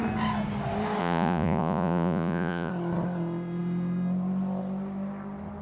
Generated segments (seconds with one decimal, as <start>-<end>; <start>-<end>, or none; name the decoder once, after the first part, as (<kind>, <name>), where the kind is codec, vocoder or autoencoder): 1.0-2.7 (vocoder, Vocos)